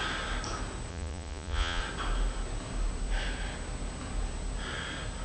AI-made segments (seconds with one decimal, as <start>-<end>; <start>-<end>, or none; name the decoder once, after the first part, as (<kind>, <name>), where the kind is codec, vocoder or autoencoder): 0.9-1.8 (vocoder, Vocos)